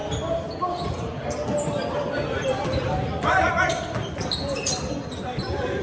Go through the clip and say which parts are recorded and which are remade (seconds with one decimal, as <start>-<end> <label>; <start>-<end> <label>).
0.0-5.8 recorded